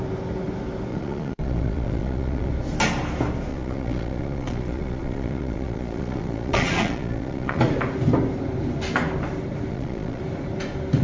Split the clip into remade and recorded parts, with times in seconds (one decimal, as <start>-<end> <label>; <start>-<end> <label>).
0.0-0.9 recorded; 0.9-2.5 remade; 2.5-3.5 recorded; 3.5-7.6 remade; 7.6-9.7 recorded; 9.7-10.2 remade; 10.2-11.0 recorded

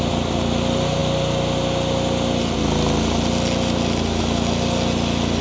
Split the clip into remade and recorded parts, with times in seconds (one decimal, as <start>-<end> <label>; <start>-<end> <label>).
0.0-5.4 recorded

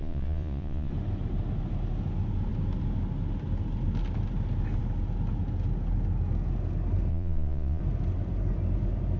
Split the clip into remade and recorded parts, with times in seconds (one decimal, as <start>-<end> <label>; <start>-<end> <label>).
0.0-0.9 remade; 0.9-7.1 recorded; 7.1-7.8 remade; 7.8-9.2 recorded

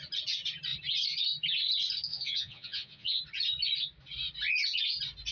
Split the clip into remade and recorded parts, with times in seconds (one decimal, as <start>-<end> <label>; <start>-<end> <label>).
0.0-2.1 recorded; 2.1-3.2 remade; 3.2-5.3 recorded

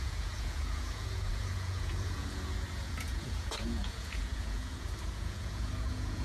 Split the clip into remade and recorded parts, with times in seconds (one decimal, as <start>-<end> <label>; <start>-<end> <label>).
0.0-6.2 remade

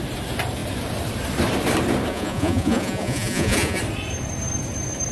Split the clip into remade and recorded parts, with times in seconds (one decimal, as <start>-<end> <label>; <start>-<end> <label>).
0.0-2.1 recorded; 2.1-3.8 remade; 3.8-5.1 recorded